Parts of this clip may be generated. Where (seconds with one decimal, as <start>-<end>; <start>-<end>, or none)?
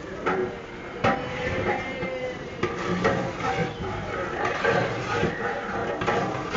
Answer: 0.0-0.4; 1.3-5.8